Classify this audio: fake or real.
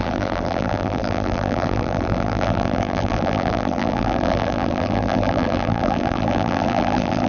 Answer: fake